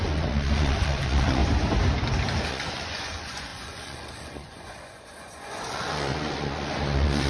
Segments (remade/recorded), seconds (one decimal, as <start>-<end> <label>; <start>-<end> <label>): 0.0-1.4 remade; 1.4-2.5 recorded; 2.5-7.3 remade